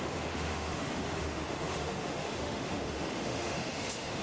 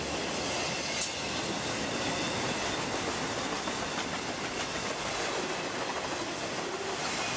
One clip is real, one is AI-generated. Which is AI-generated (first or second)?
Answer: first